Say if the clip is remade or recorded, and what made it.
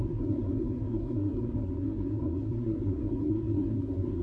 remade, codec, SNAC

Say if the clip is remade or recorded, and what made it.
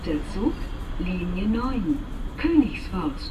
recorded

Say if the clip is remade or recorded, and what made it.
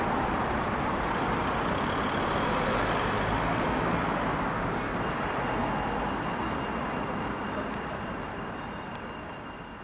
recorded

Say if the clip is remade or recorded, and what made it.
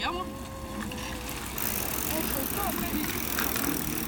recorded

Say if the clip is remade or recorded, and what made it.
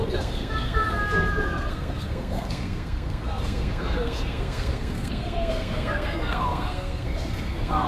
remade, codec, SNAC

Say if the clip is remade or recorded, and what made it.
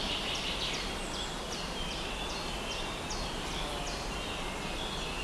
recorded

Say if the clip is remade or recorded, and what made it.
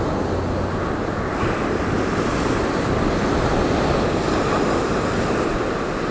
recorded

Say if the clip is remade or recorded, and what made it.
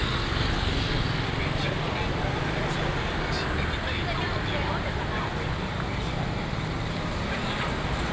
recorded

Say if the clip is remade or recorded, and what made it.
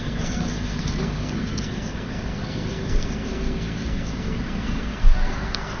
remade, codec, SNAC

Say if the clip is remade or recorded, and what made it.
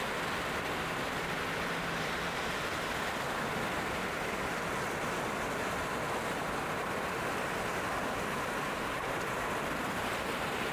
recorded